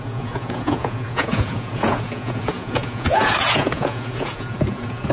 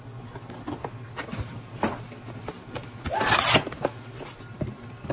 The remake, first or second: first